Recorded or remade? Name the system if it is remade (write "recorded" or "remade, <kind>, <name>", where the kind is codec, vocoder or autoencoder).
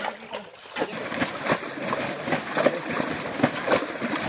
recorded